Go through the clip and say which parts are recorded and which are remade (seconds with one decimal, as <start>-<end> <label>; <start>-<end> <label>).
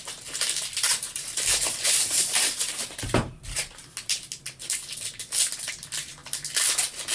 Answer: 0.0-0.9 recorded; 0.9-3.8 remade; 3.8-7.1 recorded